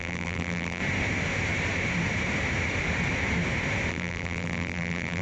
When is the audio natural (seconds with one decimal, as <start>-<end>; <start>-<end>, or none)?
0.8-3.9